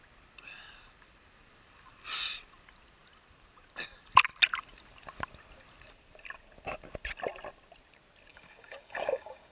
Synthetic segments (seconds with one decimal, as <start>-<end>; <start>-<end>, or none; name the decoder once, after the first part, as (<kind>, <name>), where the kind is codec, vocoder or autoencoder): 8.3-9.5 (codec, DAC)